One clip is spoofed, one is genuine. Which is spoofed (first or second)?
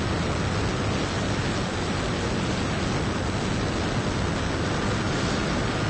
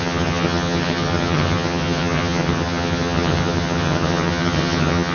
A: second